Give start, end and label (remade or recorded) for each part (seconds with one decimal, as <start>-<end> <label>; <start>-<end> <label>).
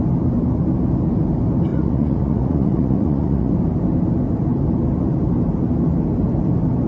0.0-1.7 recorded; 1.7-3.5 remade; 3.5-6.9 recorded